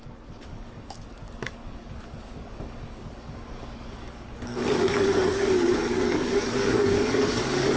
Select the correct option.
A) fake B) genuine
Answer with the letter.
A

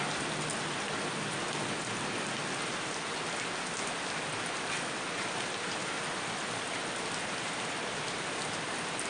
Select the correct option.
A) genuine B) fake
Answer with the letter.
A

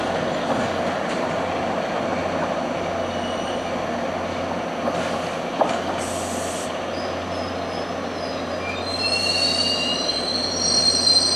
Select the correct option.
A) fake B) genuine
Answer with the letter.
B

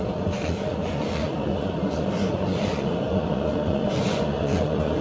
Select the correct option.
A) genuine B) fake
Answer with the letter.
B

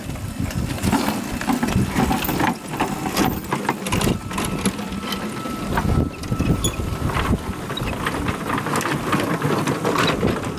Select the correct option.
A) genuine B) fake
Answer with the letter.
A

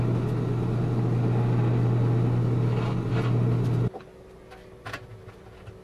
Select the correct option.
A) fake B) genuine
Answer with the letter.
B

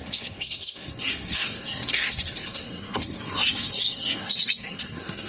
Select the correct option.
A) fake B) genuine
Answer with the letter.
A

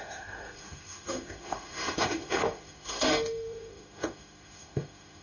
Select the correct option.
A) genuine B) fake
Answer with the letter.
B